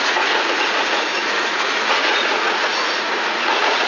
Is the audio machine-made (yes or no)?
yes